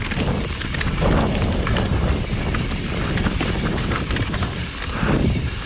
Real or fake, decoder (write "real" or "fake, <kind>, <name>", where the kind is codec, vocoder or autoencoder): real